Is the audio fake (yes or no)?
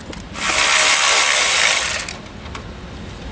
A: no